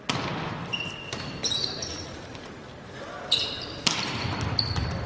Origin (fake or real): real